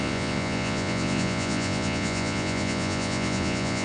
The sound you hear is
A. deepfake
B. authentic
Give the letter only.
A